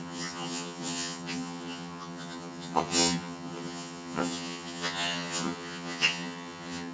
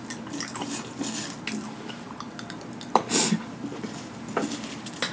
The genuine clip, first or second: second